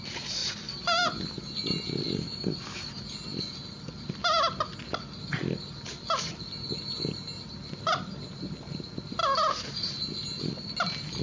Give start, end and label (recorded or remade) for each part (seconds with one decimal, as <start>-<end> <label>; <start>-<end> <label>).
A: 0.0-11.2 recorded